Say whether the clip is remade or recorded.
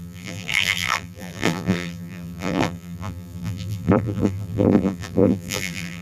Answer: remade